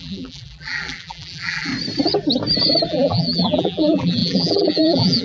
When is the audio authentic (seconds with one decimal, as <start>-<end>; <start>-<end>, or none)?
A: 1.7-2.9